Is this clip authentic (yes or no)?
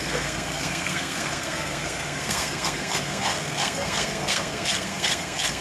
no